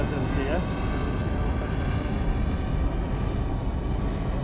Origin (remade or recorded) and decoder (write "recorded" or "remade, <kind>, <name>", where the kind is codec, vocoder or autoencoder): recorded